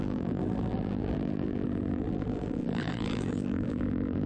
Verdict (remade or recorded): remade